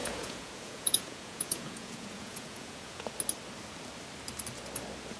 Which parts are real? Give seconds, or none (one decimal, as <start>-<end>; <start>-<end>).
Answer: 3.1-5.2